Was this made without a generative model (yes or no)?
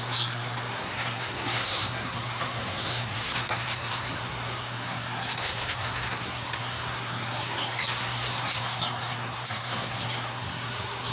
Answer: no